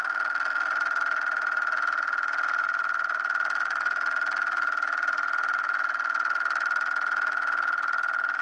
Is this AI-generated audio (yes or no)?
yes